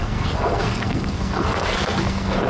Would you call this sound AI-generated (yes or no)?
yes